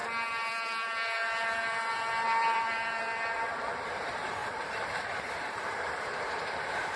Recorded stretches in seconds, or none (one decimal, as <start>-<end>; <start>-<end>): none